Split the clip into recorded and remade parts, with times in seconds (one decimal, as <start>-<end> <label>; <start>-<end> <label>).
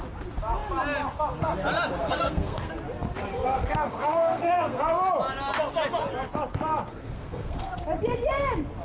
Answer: 0.0-2.0 recorded; 2.0-2.7 remade; 2.7-3.3 recorded; 3.3-4.8 remade; 4.8-6.9 recorded; 6.9-7.7 remade; 7.7-8.8 recorded